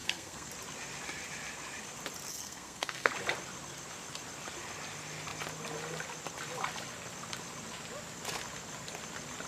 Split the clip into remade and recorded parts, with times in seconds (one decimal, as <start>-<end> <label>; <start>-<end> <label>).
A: 0.0-0.5 remade; 0.5-2.3 recorded; 2.3-3.1 remade; 3.1-9.5 recorded